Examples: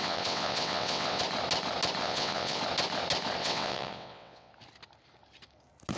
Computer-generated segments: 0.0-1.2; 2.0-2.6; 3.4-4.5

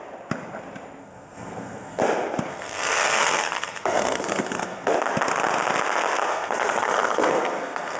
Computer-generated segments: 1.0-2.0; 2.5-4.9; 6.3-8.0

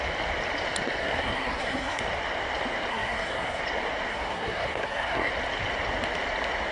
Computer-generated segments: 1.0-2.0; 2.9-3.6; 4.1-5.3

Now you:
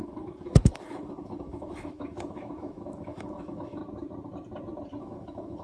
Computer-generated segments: 0.0-3.8; 5.0-5.6

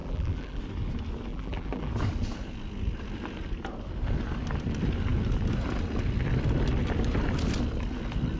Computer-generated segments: 0.0-0.6; 1.3-1.9

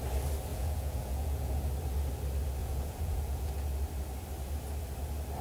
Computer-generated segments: 0.5-1.6; 2.6-3.5

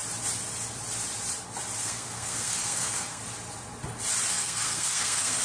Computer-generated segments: 1.8-3.2; 4.3-5.4